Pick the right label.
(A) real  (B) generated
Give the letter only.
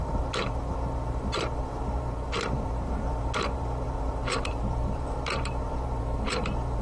B